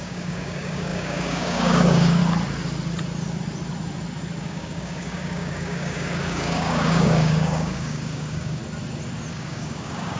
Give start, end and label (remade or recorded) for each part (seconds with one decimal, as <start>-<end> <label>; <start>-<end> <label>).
0.0-2.2 remade; 2.2-4.4 recorded; 4.4-8.6 remade; 8.6-9.3 recorded; 9.3-10.2 remade